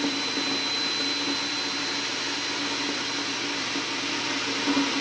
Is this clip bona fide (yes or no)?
yes